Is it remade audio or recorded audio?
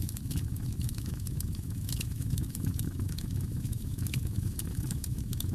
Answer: remade